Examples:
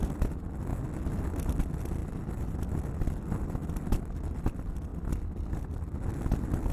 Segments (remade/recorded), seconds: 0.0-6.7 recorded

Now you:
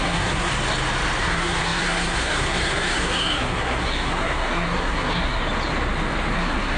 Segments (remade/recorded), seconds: 0.0-0.5 remade; 0.5-1.2 recorded; 1.2-5.4 remade; 5.4-6.3 recorded; 6.3-6.8 remade

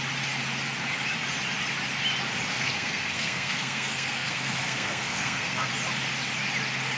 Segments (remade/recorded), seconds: 0.0-2.5 recorded; 2.5-5.7 remade; 5.7-7.0 recorded